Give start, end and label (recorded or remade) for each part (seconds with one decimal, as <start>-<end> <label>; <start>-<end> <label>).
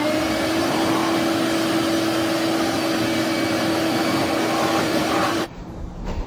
0.0-1.0 remade; 1.0-4.8 recorded; 4.8-6.3 remade